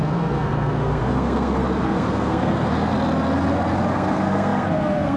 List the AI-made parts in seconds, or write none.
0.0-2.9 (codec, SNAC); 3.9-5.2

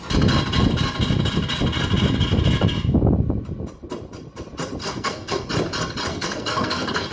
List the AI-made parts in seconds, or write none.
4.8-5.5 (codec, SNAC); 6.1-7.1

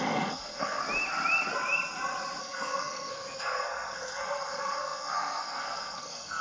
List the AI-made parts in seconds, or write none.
0.0-0.8 (codec, SNAC); 2.4-6.4

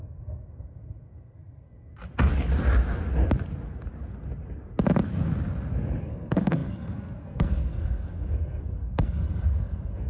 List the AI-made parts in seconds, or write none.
0.0-1.9 (codec, SNAC); 6.0-10.1

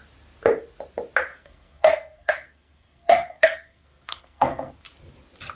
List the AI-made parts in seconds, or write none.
1.3-4.7 (codec, SNAC)

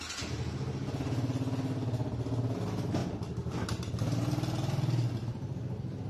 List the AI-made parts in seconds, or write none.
none

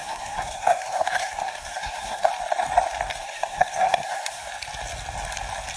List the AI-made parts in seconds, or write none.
0.0-2.3 (codec, SNAC); 3.2-4.5

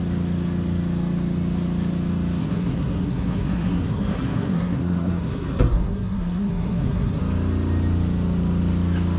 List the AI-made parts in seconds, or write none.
2.4-7.2 (codec, SNAC)